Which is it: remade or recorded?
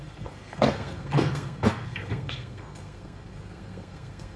remade